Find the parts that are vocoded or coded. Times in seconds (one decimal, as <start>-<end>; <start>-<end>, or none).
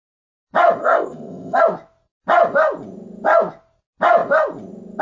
0.8-1.6